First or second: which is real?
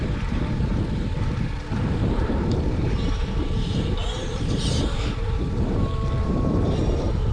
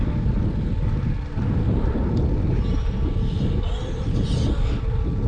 second